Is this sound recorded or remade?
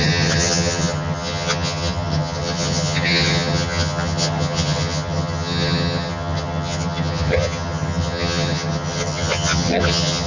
remade